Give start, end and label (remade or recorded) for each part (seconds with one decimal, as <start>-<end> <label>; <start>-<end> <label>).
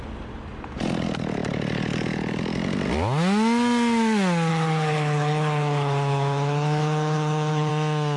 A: 0.0-4.5 recorded; 4.5-7.7 remade; 7.7-8.2 recorded